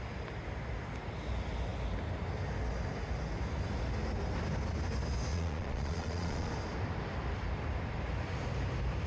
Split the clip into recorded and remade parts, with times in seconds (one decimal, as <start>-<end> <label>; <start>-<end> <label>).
0.0-5.3 recorded; 5.3-6.5 remade; 6.5-9.1 recorded